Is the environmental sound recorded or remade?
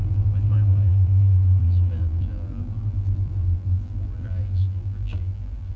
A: remade